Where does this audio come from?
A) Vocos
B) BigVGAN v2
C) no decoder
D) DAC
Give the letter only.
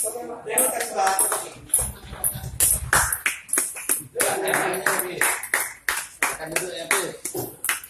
C